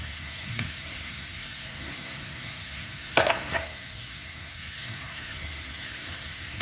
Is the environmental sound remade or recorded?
remade